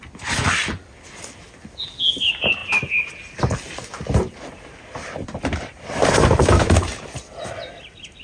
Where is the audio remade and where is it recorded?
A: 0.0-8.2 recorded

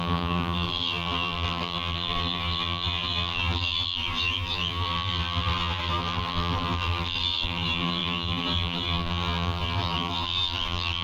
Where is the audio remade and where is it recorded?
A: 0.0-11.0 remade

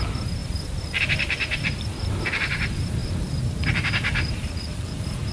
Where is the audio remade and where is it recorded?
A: 0.0-5.3 remade

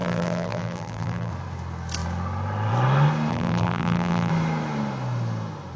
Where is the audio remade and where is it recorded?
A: 0.0-1.3 remade; 1.3-3.3 recorded; 3.3-4.3 remade; 4.3-5.8 recorded

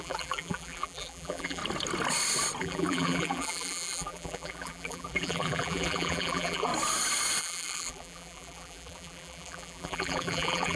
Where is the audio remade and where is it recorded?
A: 0.0-1.6 remade; 1.6-2.6 recorded; 2.6-6.7 remade; 6.7-7.4 recorded; 7.4-10.8 remade

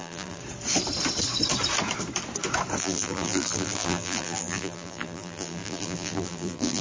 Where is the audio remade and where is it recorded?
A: 0.0-0.4 remade; 0.4-2.8 recorded; 2.8-6.8 remade

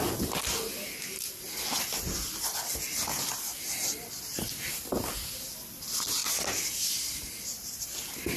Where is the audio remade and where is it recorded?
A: 0.0-6.2 recorded; 6.2-7.2 remade; 7.2-8.4 recorded